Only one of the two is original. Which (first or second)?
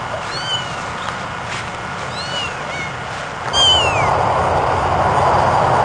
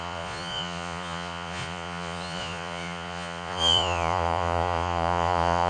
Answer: first